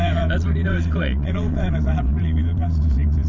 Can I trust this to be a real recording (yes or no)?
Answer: no